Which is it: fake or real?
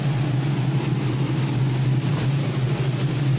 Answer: real